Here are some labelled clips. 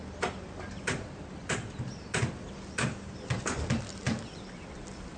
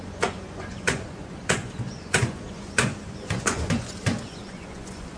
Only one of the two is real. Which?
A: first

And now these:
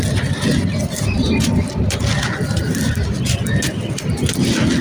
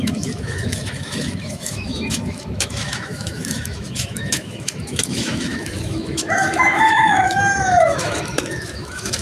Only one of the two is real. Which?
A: first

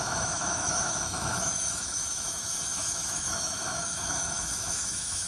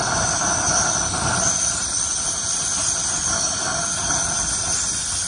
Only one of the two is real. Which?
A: second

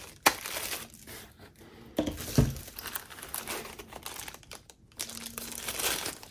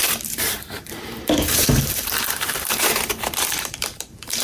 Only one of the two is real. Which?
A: first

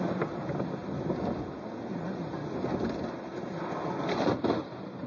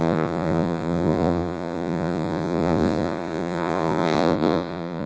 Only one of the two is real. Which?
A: first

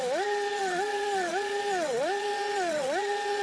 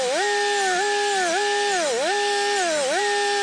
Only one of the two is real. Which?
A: second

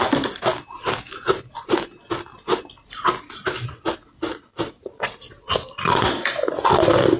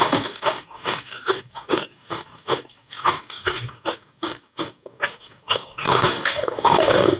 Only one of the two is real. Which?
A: first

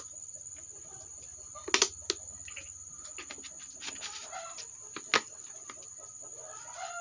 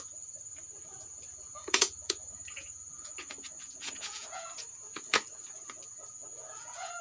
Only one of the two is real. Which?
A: first